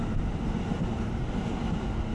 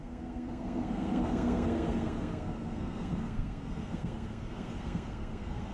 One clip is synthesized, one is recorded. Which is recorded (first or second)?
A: first